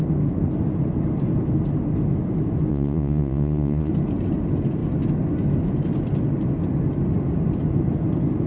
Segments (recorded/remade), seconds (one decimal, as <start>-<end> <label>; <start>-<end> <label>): 0.0-2.7 recorded; 2.7-3.9 remade; 3.9-8.5 recorded